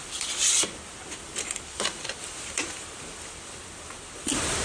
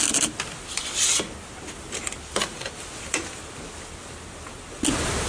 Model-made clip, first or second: first